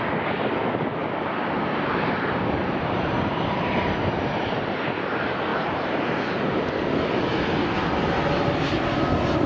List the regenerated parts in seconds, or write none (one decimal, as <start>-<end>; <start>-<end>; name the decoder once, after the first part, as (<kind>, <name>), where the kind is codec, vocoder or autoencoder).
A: 1.0-4.1 (vocoder, BigVGAN v2); 5.5-6.0